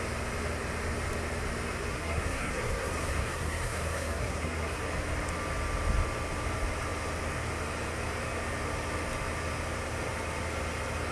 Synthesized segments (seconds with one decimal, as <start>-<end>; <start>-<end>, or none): 1.9-4.8

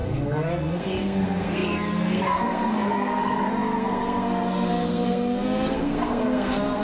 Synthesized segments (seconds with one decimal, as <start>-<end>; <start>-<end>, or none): 0.0-6.8

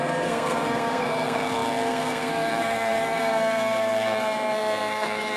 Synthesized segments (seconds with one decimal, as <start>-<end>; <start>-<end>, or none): 0.0-5.4